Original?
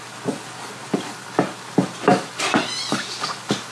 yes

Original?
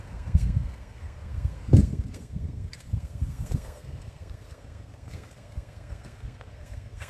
no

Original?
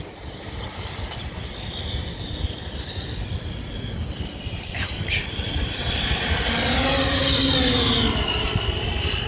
yes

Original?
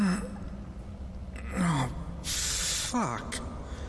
yes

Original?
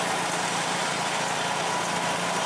yes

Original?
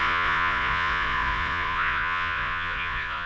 no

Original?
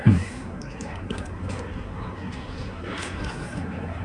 no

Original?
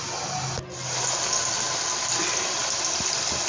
yes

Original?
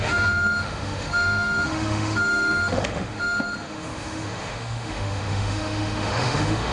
no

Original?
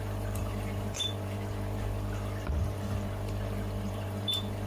no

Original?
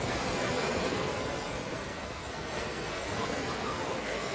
no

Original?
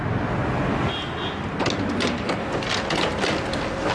yes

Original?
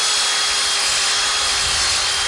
yes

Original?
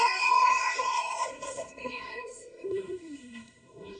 no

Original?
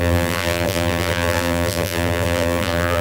no